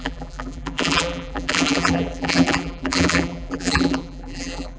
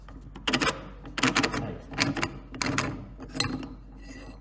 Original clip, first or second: second